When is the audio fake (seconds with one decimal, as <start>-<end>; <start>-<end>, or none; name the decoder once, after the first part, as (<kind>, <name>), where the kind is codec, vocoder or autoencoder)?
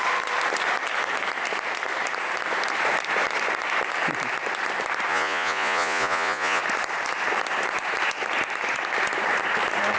5.1-6.6 (vocoder, Vocos)